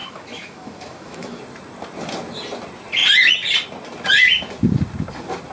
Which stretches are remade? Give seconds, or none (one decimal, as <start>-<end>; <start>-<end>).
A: 0.0-1.4